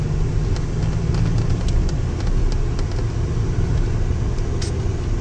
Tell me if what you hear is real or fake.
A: real